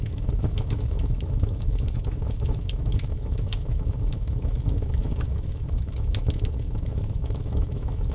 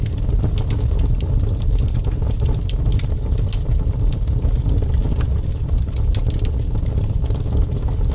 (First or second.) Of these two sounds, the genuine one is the second